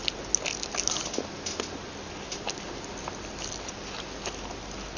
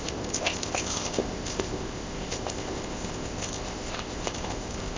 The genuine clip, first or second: first